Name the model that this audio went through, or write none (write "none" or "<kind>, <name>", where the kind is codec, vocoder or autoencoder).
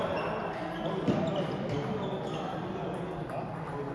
none